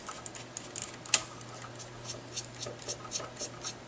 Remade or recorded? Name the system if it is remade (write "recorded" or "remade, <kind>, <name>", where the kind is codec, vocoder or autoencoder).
recorded